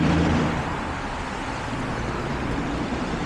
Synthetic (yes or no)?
yes